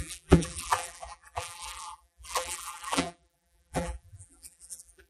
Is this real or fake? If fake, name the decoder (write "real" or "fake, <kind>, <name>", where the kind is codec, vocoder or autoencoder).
fake, vocoder, BigVGAN v2